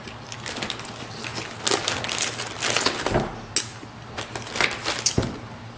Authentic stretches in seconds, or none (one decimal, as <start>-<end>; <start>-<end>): 0.0-5.8